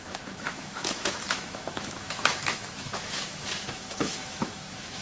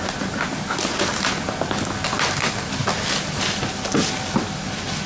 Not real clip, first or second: first